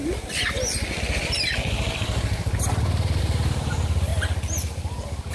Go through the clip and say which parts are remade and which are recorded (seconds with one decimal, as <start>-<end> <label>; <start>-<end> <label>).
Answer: 0.0-3.2 recorded; 3.2-4.1 remade; 4.1-5.3 recorded